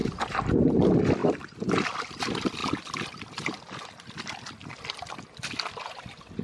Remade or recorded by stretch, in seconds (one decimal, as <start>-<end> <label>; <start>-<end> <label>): 0.0-2.6 remade; 2.6-4.5 recorded; 4.5-6.4 remade